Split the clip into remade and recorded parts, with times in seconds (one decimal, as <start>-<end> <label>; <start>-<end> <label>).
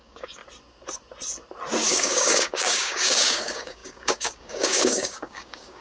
0.0-0.4 remade; 0.4-1.9 recorded; 1.9-5.8 remade